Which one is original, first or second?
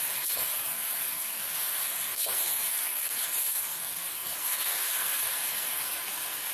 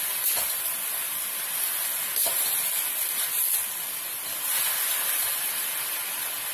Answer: second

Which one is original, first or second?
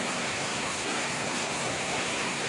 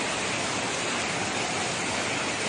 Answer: second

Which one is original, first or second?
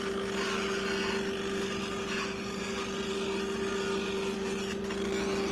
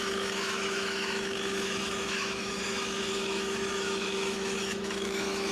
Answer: first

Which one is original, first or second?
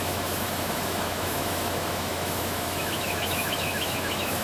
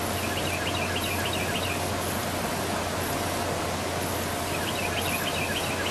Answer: second